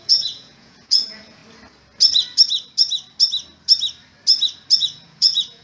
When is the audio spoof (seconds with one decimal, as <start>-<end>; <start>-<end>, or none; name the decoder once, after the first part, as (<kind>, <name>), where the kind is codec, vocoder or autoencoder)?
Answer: 0.0-1.4 (vocoder, Vocos); 4.8-5.6